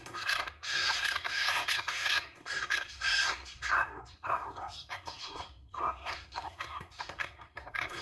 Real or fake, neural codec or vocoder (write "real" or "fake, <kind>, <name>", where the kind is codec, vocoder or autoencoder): fake, codec, SNAC